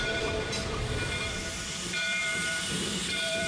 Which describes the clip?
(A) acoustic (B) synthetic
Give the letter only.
B